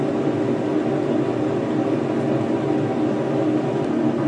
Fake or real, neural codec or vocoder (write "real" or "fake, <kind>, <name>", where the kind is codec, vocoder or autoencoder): real